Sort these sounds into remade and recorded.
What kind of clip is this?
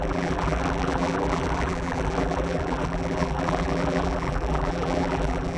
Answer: remade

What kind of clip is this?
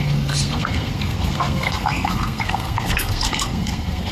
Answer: remade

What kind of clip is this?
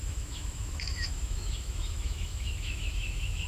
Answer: remade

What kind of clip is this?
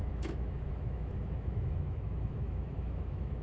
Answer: remade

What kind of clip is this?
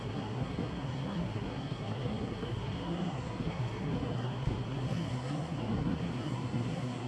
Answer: remade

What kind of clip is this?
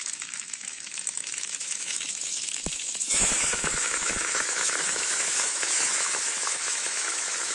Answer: remade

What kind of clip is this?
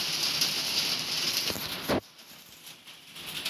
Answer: recorded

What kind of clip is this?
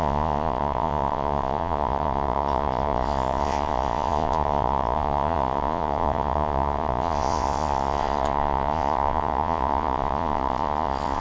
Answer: remade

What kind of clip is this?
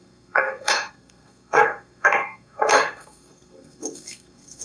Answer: remade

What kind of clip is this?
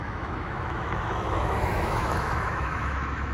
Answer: remade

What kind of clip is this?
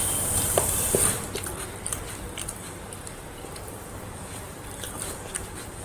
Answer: remade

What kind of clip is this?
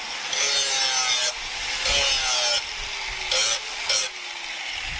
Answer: recorded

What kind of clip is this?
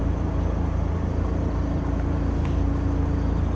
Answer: recorded